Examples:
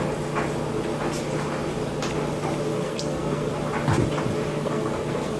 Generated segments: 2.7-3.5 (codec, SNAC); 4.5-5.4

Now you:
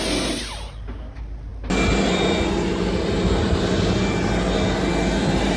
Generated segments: none

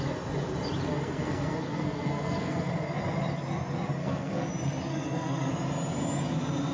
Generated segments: 0.9-2.7 (codec, SNAC); 4.0-4.5; 4.9-5.5

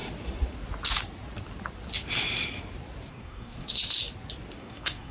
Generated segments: 3.1-3.8 (codec, SNAC); 4.6-5.1